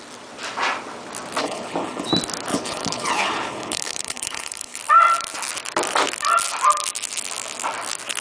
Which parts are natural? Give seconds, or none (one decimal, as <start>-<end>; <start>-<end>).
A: 0.0-1.4; 2.1-2.5; 4.8-8.2